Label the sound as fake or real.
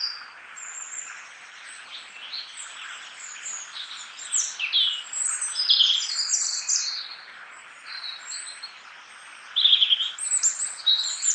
real